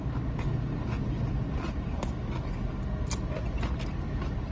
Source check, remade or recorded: recorded